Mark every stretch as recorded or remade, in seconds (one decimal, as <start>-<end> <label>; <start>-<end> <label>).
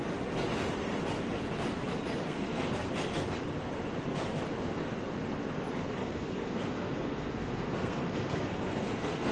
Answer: 0.0-2.2 recorded; 2.2-2.9 remade; 2.9-6.0 recorded; 6.0-9.3 remade